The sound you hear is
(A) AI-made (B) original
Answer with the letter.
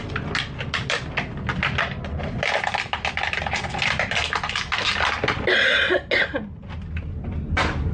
B